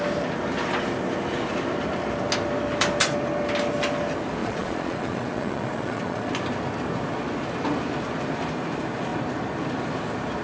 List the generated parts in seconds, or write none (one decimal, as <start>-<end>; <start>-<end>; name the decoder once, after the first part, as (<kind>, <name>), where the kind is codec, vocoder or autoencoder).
4.4-6.3 (vocoder, Vocos)